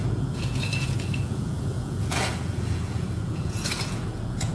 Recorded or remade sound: remade